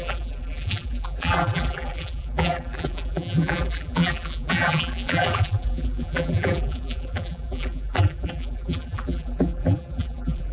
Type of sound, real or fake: fake